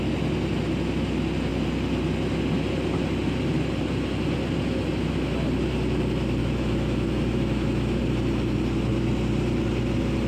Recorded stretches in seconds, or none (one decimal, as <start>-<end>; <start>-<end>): 0.0-6.4; 8.0-10.3